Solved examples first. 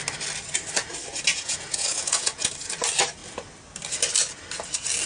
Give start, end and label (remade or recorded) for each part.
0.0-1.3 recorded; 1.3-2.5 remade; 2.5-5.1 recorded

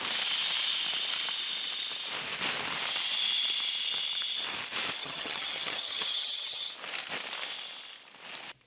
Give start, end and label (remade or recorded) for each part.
0.0-5.0 recorded; 5.0-6.7 remade; 6.7-8.7 recorded

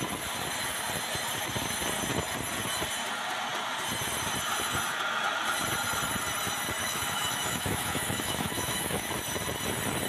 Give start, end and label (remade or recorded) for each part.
0.0-6.8 recorded; 6.8-9.1 remade; 9.1-10.1 recorded

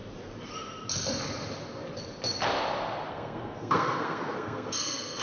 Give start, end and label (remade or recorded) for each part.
0.0-3.1 recorded; 3.1-5.2 remade

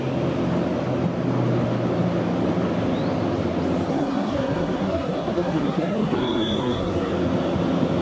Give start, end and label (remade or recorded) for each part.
0.0-3.9 recorded; 3.9-7.1 remade; 7.1-8.0 recorded